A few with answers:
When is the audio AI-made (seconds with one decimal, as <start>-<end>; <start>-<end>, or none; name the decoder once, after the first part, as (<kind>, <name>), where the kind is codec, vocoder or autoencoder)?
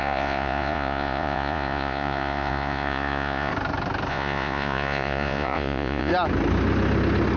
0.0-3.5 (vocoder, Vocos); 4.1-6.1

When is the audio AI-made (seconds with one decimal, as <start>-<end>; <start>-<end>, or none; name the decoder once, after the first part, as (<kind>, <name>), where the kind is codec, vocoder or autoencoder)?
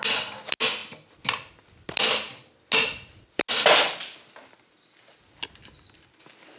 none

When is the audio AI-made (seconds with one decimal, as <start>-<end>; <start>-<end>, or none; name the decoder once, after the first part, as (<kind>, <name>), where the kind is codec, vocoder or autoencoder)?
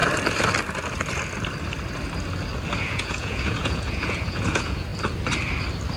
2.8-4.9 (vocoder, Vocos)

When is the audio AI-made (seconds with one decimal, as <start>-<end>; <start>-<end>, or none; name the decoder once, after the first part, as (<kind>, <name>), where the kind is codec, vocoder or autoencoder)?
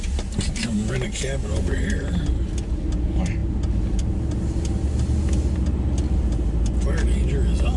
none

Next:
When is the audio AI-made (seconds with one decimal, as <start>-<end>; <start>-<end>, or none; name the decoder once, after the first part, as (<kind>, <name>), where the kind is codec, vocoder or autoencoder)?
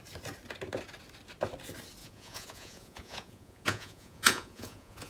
2.0-5.1 (vocoder, Vocos)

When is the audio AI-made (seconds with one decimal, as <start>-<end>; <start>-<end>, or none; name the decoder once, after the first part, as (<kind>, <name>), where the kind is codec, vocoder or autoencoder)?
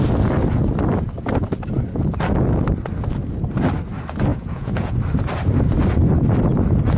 4.3-4.9 (vocoder, Vocos)